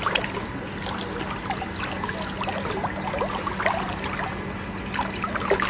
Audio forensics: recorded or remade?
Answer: recorded